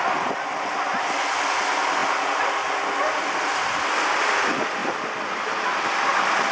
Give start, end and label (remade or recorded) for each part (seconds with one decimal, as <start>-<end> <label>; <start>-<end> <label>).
0.0-6.5 recorded